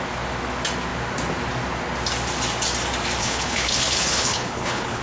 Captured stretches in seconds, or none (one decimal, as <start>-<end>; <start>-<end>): 0.0-3.2